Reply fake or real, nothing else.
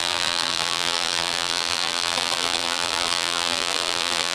fake